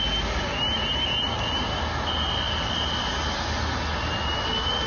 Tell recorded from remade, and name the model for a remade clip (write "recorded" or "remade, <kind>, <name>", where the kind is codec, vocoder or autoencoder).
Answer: recorded